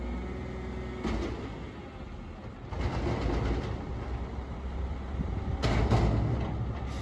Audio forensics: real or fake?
real